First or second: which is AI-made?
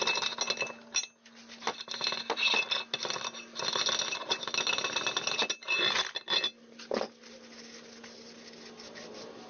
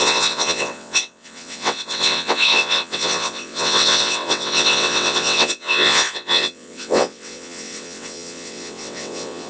second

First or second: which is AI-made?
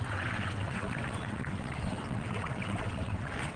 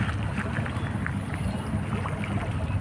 first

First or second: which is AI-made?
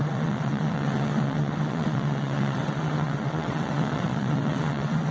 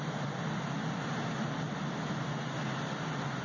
first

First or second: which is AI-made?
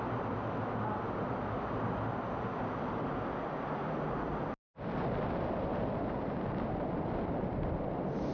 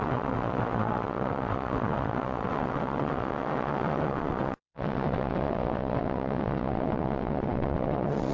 second